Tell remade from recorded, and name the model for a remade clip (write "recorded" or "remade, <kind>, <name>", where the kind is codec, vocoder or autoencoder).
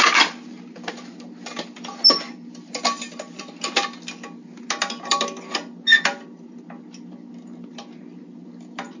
recorded